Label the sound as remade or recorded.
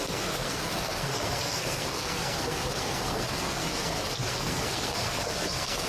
remade